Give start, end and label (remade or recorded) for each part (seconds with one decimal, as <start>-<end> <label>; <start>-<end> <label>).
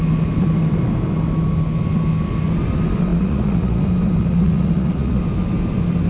0.0-3.1 recorded; 3.1-3.8 remade; 3.8-4.2 recorded; 4.2-5.2 remade; 5.2-6.1 recorded